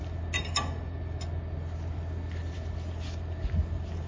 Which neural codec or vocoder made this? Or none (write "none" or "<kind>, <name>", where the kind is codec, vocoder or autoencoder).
none